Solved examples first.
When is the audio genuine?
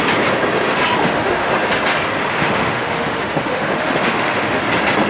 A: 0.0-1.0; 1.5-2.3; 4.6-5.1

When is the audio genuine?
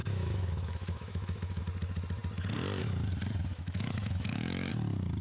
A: 1.6-3.5; 4.7-5.2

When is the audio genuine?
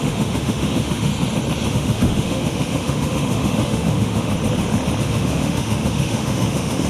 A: 1.1-1.7; 4.3-5.0